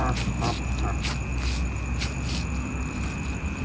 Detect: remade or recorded recorded